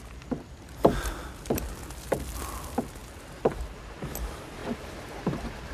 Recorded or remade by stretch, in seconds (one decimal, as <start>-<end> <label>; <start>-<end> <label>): 0.0-4.6 recorded; 4.6-5.7 remade